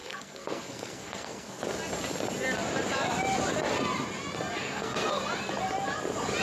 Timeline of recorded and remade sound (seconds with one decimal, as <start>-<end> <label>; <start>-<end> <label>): 0.0-1.6 remade; 1.6-4.6 recorded; 4.6-5.2 remade; 5.2-6.4 recorded